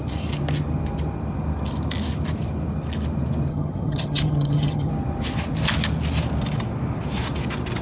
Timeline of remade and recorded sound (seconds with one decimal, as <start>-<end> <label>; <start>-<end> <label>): 0.0-3.5 recorded; 3.5-4.9 remade; 4.9-7.8 recorded